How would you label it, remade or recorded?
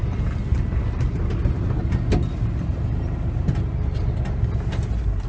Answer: recorded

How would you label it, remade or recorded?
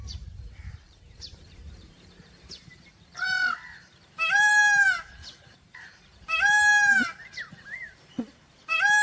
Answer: remade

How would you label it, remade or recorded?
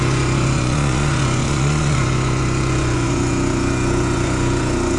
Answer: remade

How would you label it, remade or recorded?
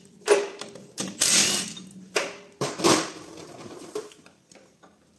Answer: remade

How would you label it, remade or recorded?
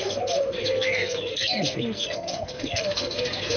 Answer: remade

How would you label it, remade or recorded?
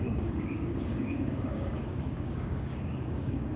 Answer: remade